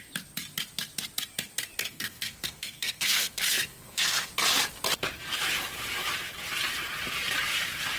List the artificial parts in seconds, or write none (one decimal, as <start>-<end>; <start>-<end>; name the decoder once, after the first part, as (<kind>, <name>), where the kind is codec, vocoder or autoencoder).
1.8-4.3 (codec, SNAC)